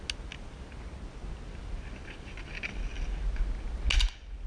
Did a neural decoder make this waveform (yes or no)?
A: no